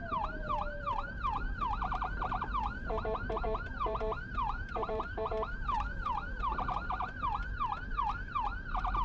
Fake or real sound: fake